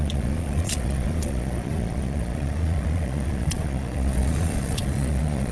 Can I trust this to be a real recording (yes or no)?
no